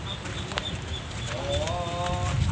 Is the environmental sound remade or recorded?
recorded